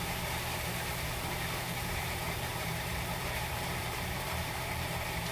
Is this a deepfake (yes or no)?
yes